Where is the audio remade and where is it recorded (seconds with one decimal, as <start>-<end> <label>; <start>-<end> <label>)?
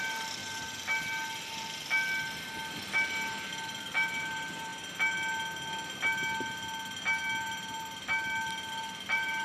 0.0-0.4 remade; 0.4-3.5 recorded; 3.5-4.7 remade; 4.7-8.7 recorded; 8.7-9.4 remade